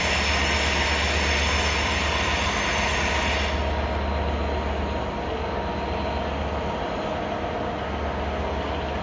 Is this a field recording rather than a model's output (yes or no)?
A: yes